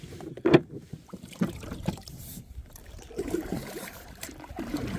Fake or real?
fake